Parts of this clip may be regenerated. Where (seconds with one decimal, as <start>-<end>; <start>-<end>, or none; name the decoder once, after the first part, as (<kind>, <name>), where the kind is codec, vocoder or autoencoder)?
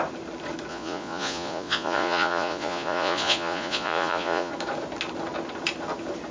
0.7-4.5 (vocoder, Vocos)